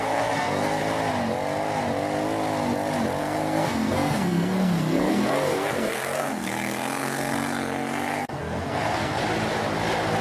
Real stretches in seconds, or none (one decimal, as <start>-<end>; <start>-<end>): 0.8-3.2; 9.2-10.2